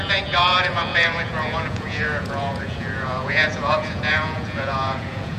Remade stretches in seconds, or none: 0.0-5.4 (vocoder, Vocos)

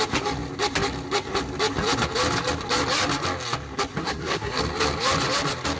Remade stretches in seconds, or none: 4.0-4.6 (codec, SNAC)

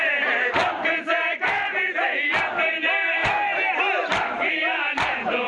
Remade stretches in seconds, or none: none

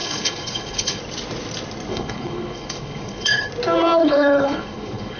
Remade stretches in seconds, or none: 0.0-1.0 (codec, HILCodec); 1.9-3.5; 4.0-5.2

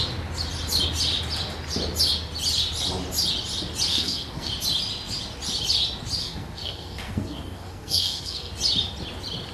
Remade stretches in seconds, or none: 3.9-4.5 (codec, SNAC); 6.2-8.5

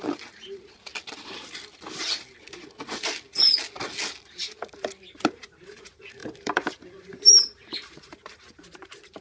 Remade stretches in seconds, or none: 0.0-0.9 (vocoder, BigVGAN v2); 5.0-9.2